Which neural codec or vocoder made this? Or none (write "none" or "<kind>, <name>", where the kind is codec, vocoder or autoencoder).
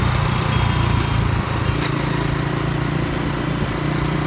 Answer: none